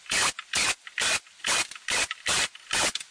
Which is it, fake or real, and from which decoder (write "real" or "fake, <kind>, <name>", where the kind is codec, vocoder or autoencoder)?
real